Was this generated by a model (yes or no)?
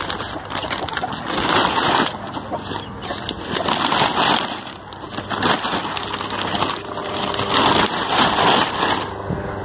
no